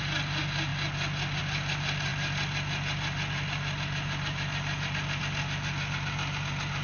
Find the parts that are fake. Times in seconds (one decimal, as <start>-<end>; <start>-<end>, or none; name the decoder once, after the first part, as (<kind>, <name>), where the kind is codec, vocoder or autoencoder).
none